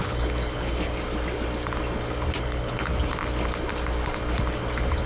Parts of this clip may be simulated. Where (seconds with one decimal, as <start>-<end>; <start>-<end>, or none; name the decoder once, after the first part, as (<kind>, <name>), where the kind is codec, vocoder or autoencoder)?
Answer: 0.0-0.9 (codec, HILCodec); 2.4-2.9